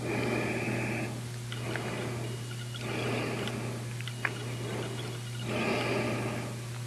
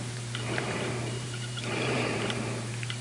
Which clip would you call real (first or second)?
first